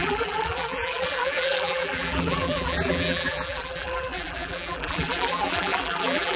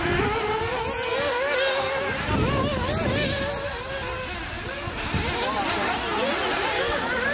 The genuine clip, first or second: second